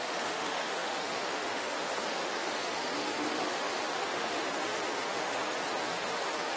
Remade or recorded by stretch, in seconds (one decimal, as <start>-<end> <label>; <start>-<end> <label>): 0.0-5.4 remade; 5.4-5.9 recorded; 5.9-6.6 remade